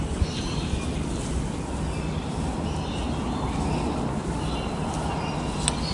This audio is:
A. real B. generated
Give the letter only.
A